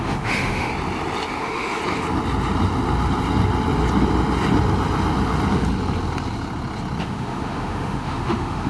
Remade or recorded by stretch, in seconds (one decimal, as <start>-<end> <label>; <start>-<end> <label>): 0.0-0.7 remade; 0.7-1.4 recorded; 1.4-1.8 remade; 1.8-7.0 recorded; 7.0-8.7 remade